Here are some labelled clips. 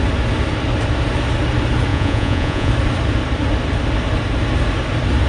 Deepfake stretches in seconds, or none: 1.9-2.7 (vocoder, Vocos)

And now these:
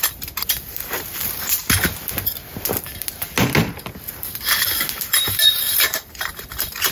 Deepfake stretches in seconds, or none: 0.0-1.6 (vocoder, BigVGAN v2); 5.0-6.9

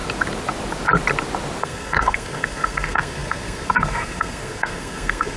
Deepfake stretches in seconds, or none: 1.6-5.4 (codec, SNAC)

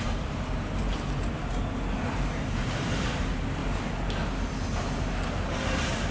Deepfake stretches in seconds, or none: 0.0-0.9 (vocoder, BigVGAN v2); 2.1-3.6

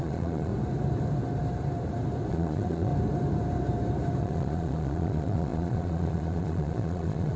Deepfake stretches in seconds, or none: 0.0-0.5 (vocoder, Vocos); 2.3-2.9; 4.2-7.4

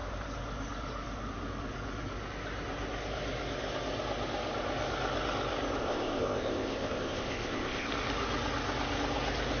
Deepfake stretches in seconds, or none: 5.8-7.9 (codec, ZipCodec)

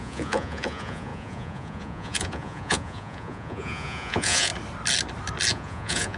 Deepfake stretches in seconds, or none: 0.0-4.5 (vocoder, Vocos); 5.5-6.2

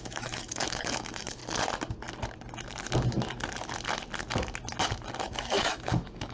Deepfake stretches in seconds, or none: 0.0-1.4 (autoencoder, DAC-VAE); 5.2-6.3